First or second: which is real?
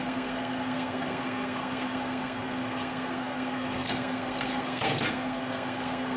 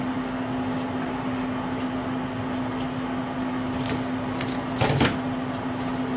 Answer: second